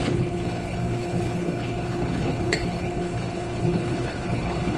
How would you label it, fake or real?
fake